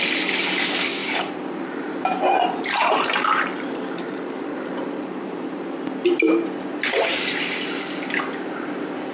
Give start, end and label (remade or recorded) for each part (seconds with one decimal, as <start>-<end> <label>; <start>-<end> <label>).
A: 0.0-1.0 recorded; 1.0-5.7 remade; 5.7-6.9 recorded; 6.9-7.6 remade; 7.6-9.1 recorded